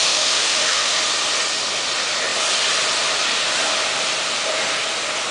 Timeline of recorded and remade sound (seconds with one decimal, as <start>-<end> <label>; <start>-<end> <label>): 0.0-1.0 remade; 1.0-5.3 recorded